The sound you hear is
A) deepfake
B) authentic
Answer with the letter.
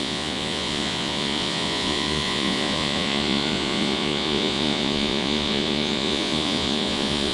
A